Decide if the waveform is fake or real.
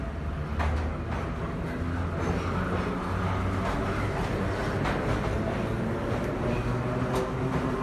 real